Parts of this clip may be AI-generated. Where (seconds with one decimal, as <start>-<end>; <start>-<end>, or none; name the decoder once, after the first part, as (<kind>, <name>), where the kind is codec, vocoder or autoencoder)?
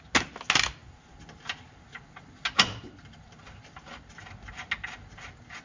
none